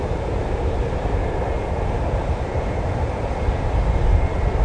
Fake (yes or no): yes